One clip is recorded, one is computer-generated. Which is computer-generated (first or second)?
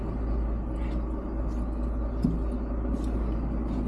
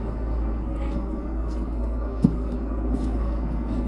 second